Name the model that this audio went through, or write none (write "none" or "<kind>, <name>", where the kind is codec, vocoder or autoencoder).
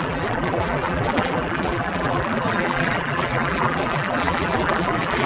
vocoder, BigVGAN v2